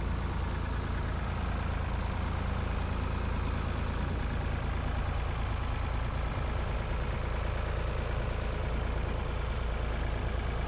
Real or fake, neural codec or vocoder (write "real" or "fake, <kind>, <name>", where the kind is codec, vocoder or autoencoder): real